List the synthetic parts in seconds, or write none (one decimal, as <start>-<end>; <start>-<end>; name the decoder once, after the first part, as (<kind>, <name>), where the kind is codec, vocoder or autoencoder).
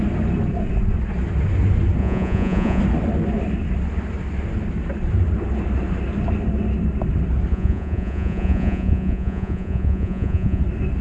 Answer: 2.0-2.8 (vocoder, Vocos); 7.5-10.6